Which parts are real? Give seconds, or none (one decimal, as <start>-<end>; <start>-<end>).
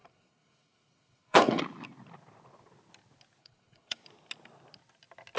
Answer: 1.6-3.4; 4.0-5.4